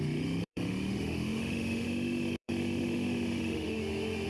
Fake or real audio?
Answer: fake